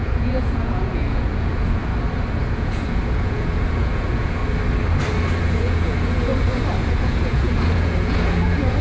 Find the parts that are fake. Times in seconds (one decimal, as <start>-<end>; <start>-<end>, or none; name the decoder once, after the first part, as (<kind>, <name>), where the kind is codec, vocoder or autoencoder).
0.0-1.8 (vocoder, Vocos); 2.4-4.4; 5.4-6.3; 6.9-8.8